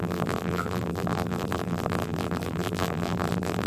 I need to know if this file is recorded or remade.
remade